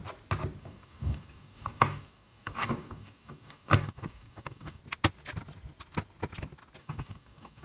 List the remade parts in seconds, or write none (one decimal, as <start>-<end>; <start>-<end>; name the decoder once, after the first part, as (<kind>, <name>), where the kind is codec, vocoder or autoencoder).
0.6-4.8 (codec, DAC); 6.8-7.6